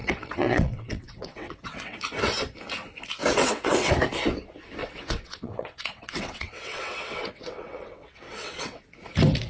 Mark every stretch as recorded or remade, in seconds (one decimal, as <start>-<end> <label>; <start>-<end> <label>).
0.0-2.0 remade; 2.0-3.2 recorded; 3.2-3.9 remade; 3.9-4.8 recorded; 4.8-8.8 remade; 8.8-9.5 recorded